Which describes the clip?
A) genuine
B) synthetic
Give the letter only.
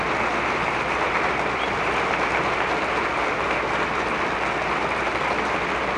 A